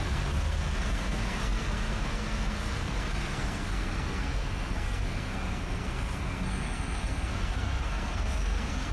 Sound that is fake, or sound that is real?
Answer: fake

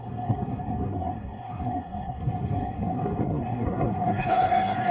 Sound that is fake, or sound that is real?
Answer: fake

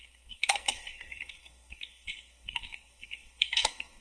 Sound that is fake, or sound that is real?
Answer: fake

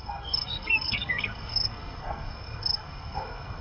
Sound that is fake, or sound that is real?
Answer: fake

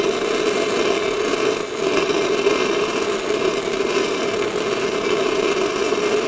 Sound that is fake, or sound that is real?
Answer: real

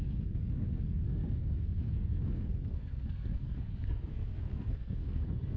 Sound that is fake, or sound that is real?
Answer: fake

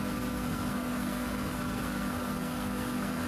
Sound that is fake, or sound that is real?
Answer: fake